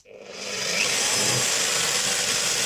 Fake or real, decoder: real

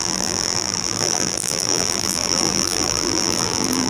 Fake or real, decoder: fake, vocoder, BigVGAN v2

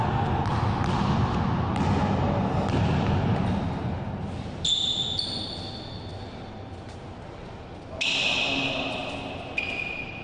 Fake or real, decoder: real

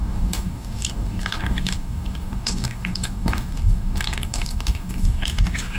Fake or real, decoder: fake, codec, DAC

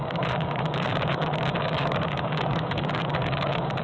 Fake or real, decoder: fake, codec, DAC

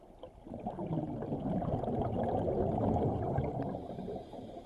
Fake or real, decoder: real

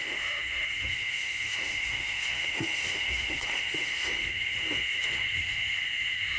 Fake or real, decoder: fake, autoencoder, DAC-VAE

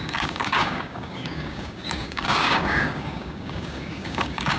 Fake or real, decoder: fake, codec, DAC